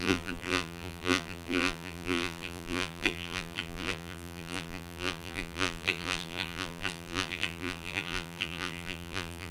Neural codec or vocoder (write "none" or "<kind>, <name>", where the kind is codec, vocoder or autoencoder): vocoder, BigVGAN v2